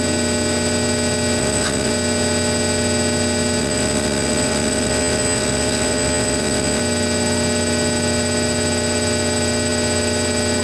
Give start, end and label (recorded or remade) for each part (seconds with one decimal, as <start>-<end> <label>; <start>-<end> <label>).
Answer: 0.0-1.4 recorded; 1.4-1.9 remade; 1.9-3.6 recorded; 3.6-6.8 remade; 6.8-10.6 recorded